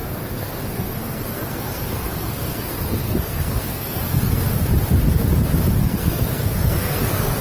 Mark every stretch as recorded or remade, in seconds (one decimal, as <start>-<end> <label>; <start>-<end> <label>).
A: 0.0-4.4 remade; 4.4-5.8 recorded; 5.8-7.4 remade